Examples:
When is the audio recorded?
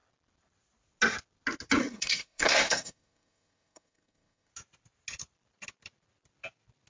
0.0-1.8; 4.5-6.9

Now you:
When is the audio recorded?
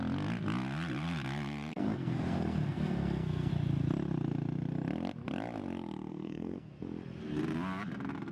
0.0-1.7; 3.5-6.1; 6.7-8.3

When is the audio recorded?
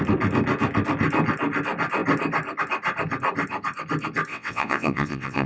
0.0-4.3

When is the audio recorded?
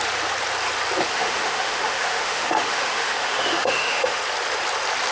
0.0-1.1; 4.2-5.1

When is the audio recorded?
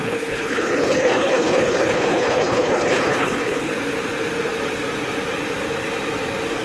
3.7-6.6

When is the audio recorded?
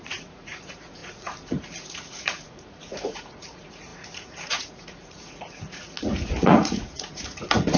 none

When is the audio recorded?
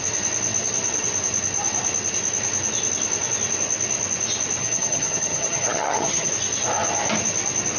0.0-4.6; 6.3-7.8